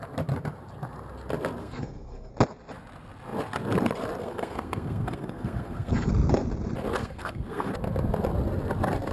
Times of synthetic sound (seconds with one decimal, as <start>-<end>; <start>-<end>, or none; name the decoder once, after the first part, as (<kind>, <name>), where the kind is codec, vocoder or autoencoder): 1.6-2.3 (codec, SNAC); 4.2-6.1; 7.0-7.7